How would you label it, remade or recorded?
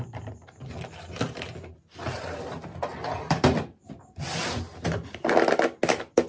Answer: recorded